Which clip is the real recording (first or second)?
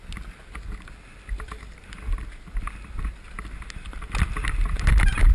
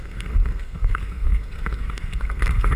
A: first